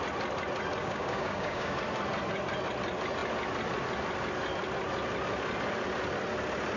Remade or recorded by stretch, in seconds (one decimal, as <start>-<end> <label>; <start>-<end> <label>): 0.0-0.8 recorded; 0.8-1.8 remade; 1.8-6.8 recorded